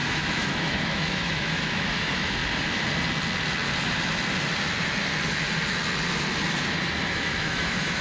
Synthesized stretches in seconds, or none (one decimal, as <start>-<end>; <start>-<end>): 0.0-2.4; 7.2-8.0